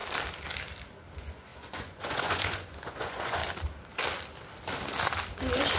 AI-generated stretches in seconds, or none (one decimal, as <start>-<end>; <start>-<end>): 1.1-3.4